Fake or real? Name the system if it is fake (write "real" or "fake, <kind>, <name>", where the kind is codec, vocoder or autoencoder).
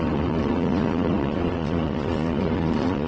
fake, vocoder, Vocos